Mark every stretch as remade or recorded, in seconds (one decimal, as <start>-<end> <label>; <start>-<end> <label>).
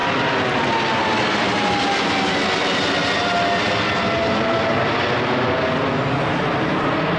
0.0-7.2 recorded